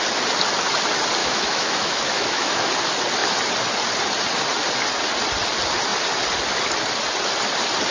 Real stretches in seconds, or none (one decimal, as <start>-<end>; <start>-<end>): 0.0-1.2; 2.7-7.9